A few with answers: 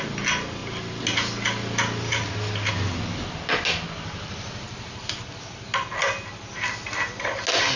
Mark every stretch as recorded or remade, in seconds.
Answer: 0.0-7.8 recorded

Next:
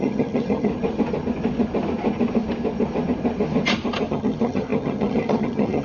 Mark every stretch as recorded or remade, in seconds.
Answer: 0.0-0.7 remade; 0.7-4.1 recorded; 4.1-5.8 remade